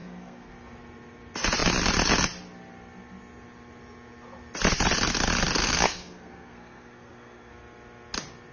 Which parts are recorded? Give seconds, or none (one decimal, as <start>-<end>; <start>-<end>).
0.5-5.6; 7.5-8.5